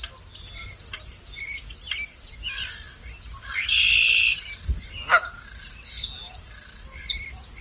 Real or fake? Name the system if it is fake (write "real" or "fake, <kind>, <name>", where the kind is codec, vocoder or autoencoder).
real